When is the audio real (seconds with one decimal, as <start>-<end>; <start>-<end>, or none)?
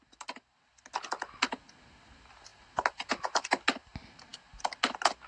0.0-5.3